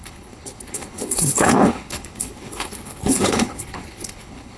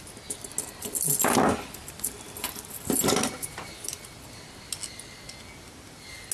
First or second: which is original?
second